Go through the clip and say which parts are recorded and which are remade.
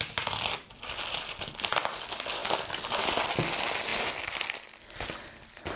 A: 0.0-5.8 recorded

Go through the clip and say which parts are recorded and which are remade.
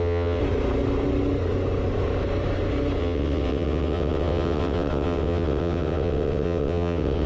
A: 0.0-0.4 remade; 0.4-3.0 recorded; 3.0-7.3 remade